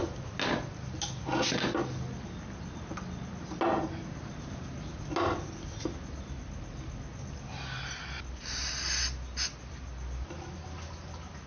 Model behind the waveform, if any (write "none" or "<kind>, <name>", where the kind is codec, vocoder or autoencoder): none